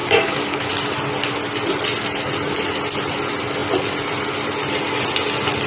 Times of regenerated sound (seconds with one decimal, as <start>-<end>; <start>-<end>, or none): 0.0-0.7